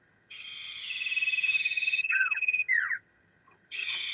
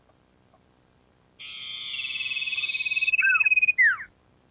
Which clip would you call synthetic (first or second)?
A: first